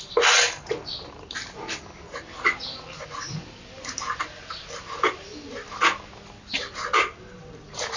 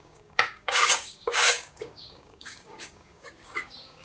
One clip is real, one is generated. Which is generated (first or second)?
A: second